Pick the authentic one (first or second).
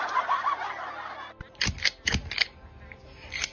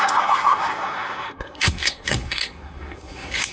first